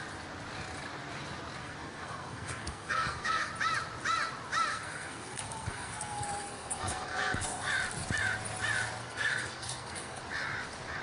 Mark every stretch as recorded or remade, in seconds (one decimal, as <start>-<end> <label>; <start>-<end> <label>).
0.0-1.6 recorded; 1.6-3.5 remade; 3.5-4.7 recorded; 4.7-7.7 remade; 7.7-9.0 recorded; 9.0-10.2 remade; 10.2-11.0 recorded